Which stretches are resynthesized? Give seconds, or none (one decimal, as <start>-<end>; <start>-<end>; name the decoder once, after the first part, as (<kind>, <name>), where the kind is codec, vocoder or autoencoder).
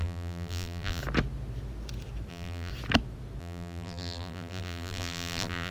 0.0-1.0 (vocoder, BigVGAN v2); 2.3-2.7; 3.4-5.7